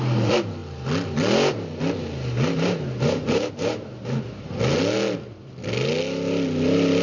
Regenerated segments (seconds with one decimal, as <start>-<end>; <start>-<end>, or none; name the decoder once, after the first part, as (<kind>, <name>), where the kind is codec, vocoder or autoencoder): none